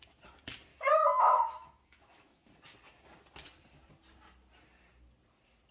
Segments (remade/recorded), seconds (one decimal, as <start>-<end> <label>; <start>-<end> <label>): 0.0-0.7 recorded; 0.7-2.5 remade; 2.5-5.7 recorded